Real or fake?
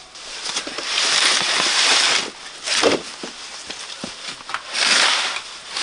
real